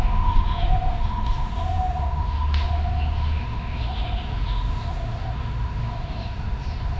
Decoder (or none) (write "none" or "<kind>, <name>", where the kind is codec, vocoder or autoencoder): autoencoder, DAC-VAE